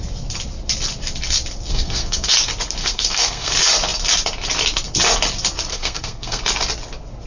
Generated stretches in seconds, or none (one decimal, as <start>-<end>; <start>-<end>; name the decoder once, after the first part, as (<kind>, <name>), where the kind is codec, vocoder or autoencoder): 1.7-2.3 (codec, SNAC); 2.8-3.5; 5.7-6.4